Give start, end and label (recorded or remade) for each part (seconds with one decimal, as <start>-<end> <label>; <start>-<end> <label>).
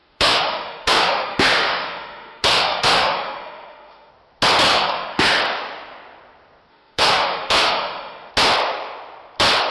0.0-4.1 remade; 4.1-4.7 recorded; 4.7-5.4 remade; 5.4-6.7 recorded; 6.7-8.3 remade; 8.3-9.7 recorded